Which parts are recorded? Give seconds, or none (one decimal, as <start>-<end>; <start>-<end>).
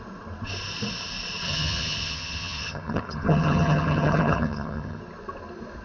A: 0.0-1.5; 5.0-5.8